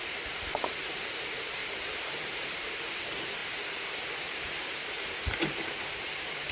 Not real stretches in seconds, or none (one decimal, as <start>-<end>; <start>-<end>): 0.0-1.6; 2.2-3.4; 5.4-6.5